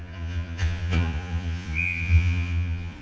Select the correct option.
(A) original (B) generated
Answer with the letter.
B